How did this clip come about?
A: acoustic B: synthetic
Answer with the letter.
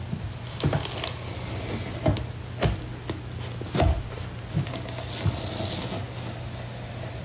A